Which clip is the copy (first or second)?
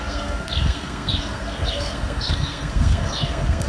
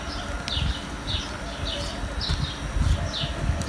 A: first